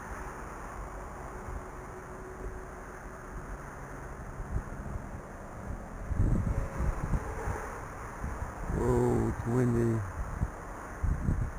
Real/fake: real